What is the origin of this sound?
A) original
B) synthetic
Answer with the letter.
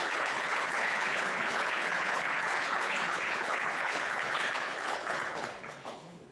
B